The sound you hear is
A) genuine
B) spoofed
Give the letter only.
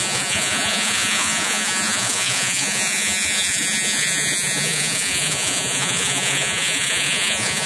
B